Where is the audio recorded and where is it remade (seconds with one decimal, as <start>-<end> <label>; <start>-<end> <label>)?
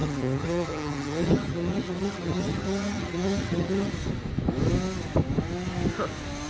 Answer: 0.0-3.9 remade; 3.9-6.5 recorded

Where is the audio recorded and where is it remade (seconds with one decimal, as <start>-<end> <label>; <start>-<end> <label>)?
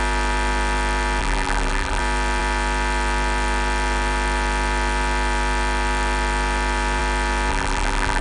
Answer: 0.0-1.2 recorded; 1.2-2.0 remade; 2.0-7.5 recorded; 7.5-8.2 remade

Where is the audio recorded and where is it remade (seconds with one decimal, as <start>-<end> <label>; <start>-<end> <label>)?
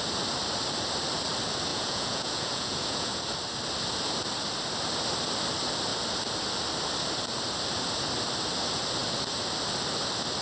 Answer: 0.0-1.7 recorded; 1.7-3.2 remade; 3.2-10.4 recorded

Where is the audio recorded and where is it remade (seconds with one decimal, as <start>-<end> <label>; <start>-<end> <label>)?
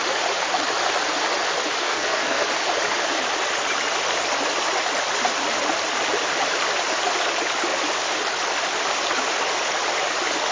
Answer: 0.0-1.8 recorded; 1.8-2.5 remade; 2.5-10.5 recorded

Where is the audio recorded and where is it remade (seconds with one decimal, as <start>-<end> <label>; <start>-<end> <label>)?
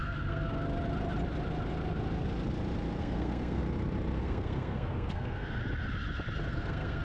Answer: 0.0-0.5 remade; 0.5-3.0 recorded; 3.0-3.6 remade; 3.6-4.2 recorded; 4.2-5.6 remade; 5.6-6.5 recorded; 6.5-7.0 remade